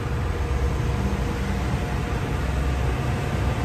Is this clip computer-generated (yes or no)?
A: no